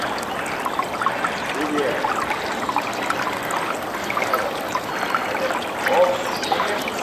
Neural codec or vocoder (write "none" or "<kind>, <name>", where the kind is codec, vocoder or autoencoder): none